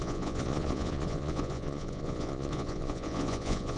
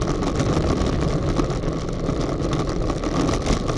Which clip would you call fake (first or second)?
first